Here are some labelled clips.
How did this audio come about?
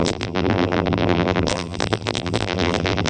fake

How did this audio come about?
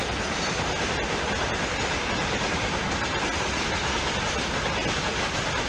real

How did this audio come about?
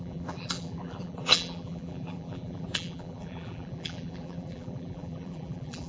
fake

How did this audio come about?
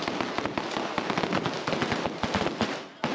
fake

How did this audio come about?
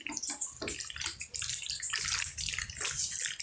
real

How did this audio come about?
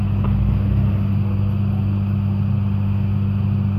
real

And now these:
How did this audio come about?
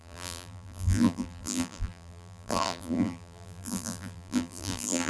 fake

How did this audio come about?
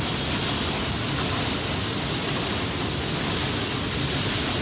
real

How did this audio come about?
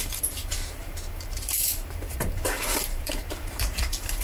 fake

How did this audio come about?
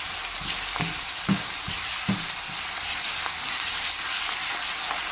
real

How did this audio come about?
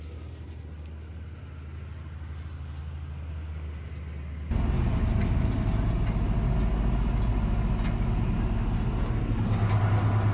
real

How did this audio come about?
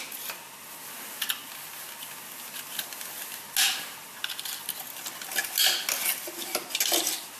real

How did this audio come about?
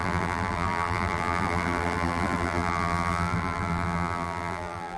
fake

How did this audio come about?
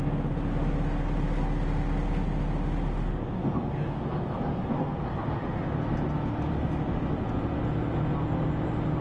real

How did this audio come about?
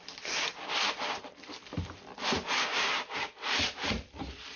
fake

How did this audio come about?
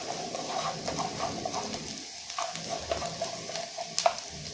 real